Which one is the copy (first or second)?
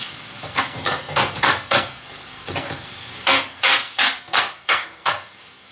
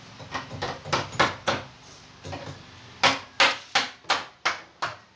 first